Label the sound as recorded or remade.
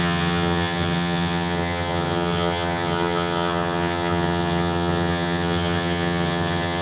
remade